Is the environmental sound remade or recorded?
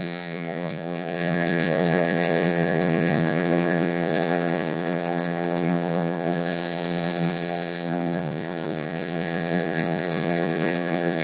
remade